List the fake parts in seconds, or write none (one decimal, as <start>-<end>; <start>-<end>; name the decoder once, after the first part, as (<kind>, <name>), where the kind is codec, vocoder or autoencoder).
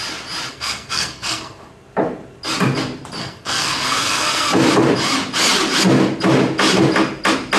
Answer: 0.5-1.7 (codec, SNAC); 3.2-4.5